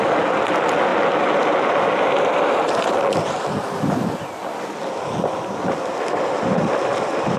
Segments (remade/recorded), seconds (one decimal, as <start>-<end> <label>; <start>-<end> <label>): 0.0-7.4 recorded